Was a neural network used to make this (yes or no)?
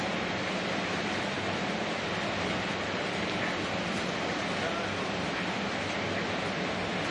no